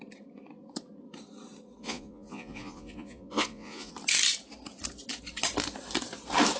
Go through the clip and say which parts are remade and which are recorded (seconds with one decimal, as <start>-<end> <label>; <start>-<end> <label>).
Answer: 0.0-1.8 recorded; 1.8-3.9 remade; 3.9-6.6 recorded